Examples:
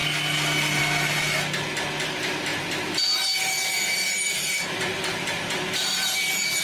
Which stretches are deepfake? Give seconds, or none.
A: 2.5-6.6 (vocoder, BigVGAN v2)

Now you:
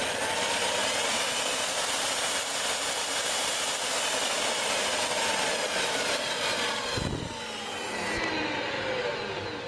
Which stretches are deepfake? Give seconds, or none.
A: none